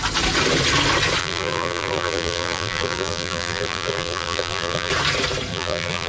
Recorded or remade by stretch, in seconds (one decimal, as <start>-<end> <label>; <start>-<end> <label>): 0.0-1.2 recorded; 1.2-4.9 remade; 4.9-5.5 recorded; 5.5-6.1 remade

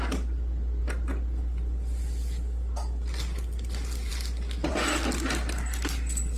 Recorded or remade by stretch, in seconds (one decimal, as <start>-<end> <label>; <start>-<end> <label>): 0.0-6.4 recorded

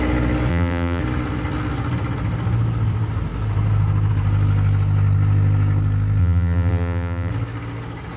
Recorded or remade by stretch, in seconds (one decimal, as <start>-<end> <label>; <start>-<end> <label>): 0.0-0.5 recorded; 0.5-1.0 remade; 1.0-6.2 recorded; 6.2-7.3 remade; 7.3-8.2 recorded

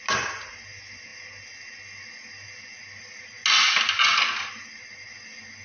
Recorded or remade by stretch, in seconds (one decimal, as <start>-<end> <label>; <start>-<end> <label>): 0.0-5.6 recorded

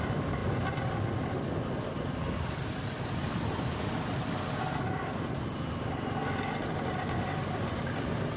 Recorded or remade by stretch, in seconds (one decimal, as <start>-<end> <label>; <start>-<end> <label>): 0.0-0.4 remade; 0.4-4.8 recorded; 4.8-8.4 remade

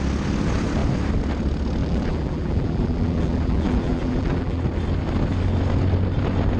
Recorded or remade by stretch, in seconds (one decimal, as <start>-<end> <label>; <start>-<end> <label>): 0.0-1.8 recorded; 1.8-4.6 remade; 4.6-6.6 recorded